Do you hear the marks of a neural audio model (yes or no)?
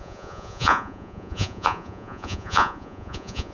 yes